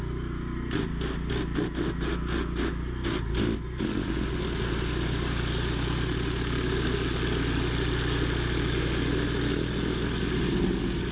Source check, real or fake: real